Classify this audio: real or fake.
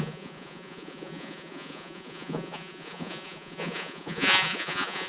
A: fake